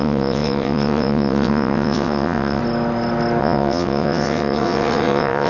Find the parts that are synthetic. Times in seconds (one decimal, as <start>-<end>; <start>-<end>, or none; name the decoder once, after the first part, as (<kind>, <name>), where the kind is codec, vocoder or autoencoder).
0.0-2.6 (vocoder, WaveNeXt); 3.4-5.5